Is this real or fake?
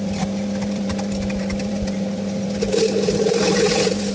fake